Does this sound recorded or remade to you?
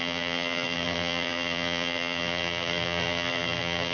remade